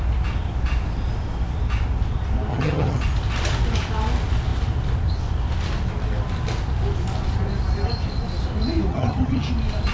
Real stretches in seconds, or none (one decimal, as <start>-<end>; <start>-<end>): 0.0-2.5; 3.0-8.9; 9.5-9.9